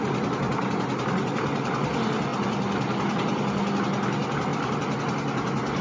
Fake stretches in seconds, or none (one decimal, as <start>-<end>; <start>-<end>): none